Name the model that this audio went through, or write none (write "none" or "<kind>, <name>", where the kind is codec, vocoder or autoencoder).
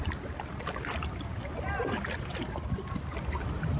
none